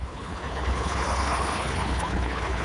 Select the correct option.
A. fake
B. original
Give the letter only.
A